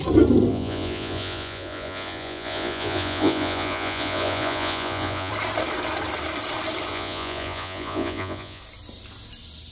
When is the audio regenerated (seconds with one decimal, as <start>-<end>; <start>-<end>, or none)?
0.5-5.3; 6.9-8.6